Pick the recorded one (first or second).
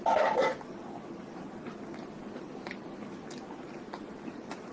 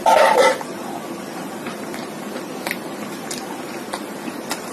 first